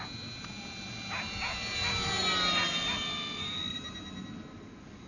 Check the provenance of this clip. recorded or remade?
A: recorded